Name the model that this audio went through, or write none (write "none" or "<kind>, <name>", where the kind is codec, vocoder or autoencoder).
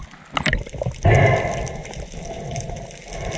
none